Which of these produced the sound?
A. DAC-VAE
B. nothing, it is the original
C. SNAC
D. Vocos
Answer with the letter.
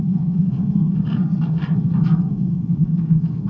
C